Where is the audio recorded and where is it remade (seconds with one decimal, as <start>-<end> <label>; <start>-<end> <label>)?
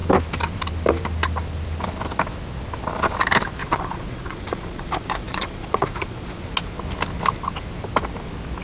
0.0-3.6 recorded; 3.6-6.4 remade; 6.4-8.6 recorded